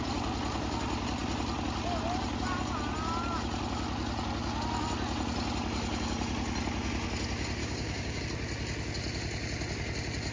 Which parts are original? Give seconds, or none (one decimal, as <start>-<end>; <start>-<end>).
0.0-7.6; 8.2-10.3